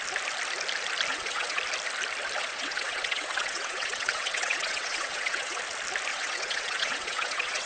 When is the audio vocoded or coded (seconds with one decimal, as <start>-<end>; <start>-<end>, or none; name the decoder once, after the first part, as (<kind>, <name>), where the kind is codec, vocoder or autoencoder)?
1.1-1.6 (vocoder, WaveNeXt); 2.4-5.6; 6.1-7.7